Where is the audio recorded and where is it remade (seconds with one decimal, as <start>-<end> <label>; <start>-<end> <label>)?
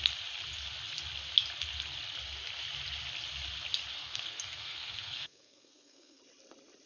0.0-3.9 recorded; 3.9-6.2 remade; 6.2-6.9 recorded